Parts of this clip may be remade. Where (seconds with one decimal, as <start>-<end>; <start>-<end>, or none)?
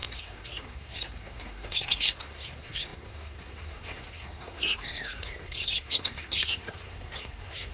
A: 0.0-7.7